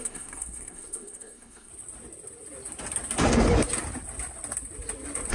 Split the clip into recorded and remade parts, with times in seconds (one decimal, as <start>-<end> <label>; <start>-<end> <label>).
0.0-1.7 remade; 1.7-5.3 recorded